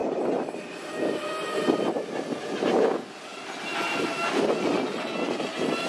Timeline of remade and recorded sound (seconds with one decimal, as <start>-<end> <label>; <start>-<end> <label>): 0.0-5.9 recorded